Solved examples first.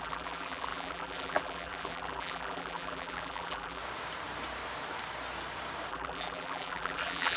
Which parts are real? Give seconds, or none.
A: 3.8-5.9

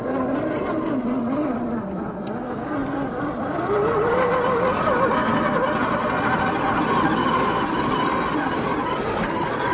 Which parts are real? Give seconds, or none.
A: 0.0-9.7

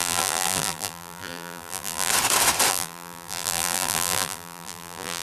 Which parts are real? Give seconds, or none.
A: 2.1-2.7

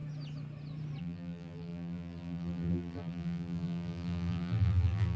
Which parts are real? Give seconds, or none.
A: 0.0-1.0

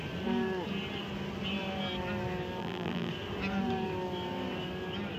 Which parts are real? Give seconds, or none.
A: 0.0-2.6; 3.1-5.2